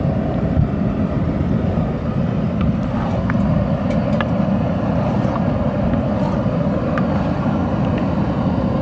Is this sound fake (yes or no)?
no